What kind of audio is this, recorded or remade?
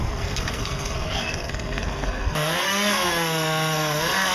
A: remade